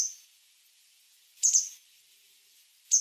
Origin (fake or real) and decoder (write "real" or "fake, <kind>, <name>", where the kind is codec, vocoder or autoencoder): real